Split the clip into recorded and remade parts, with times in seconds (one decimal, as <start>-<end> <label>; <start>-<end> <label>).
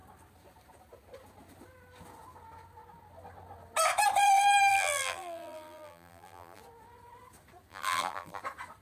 0.0-4.7 recorded; 4.7-6.6 remade; 6.6-7.7 recorded; 7.7-8.4 remade; 8.4-8.8 recorded